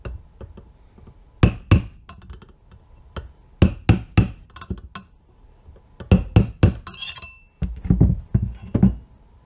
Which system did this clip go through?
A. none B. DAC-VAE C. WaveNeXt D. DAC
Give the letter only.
A